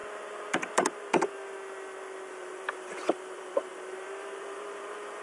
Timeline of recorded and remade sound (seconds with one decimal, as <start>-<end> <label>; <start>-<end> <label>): 0.0-2.3 recorded; 2.3-5.2 remade